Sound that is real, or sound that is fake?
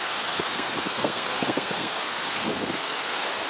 fake